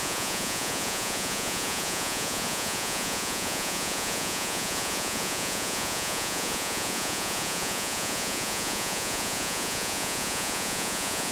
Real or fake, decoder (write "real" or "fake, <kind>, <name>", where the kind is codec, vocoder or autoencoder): fake, vocoder, Vocos